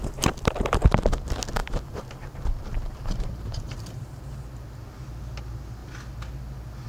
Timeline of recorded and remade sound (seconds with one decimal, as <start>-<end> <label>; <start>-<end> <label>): 0.0-1.6 recorded; 1.6-4.3 remade; 4.3-6.9 recorded